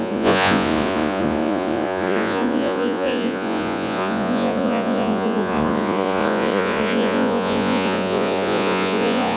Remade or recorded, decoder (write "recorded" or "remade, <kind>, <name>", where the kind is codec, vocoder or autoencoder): remade, vocoder, Vocos